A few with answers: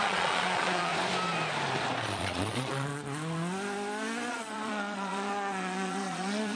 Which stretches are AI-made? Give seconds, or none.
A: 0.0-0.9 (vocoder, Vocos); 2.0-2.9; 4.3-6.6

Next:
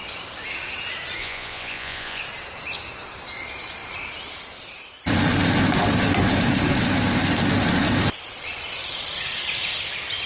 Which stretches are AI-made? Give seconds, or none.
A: 1.2-2.2 (vocoder, Vocos)

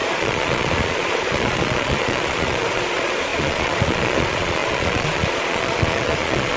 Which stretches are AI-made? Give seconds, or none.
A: 0.0-6.6 (vocoder, Vocos)

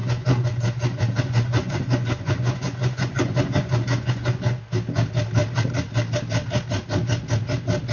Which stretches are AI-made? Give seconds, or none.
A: 0.0-4.6 (vocoder, Vocos)

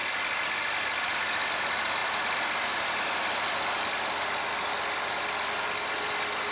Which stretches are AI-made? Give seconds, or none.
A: none

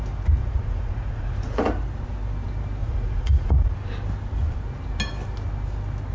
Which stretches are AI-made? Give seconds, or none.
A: 0.4-1.7 (vocoder, Vocos); 2.8-3.7

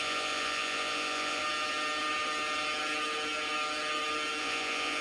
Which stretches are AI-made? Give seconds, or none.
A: 0.0-1.4 (vocoder, Vocos); 4.4-5.0

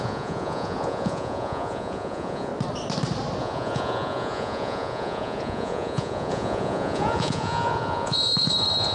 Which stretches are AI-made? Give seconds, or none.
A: 0.0-2.5 (vocoder, Vocos); 3.4-8.9